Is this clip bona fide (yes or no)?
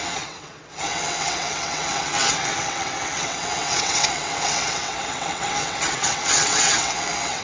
no